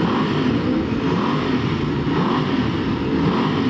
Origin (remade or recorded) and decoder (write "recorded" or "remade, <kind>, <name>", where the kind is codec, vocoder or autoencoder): recorded